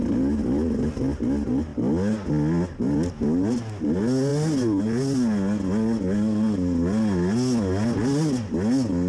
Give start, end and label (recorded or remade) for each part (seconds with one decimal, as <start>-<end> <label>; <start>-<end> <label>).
0.0-9.1 recorded